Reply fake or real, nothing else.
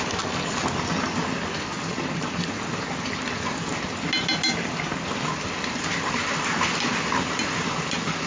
real